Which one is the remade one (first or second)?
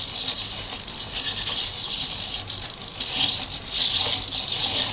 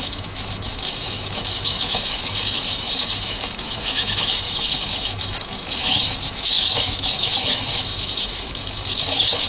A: second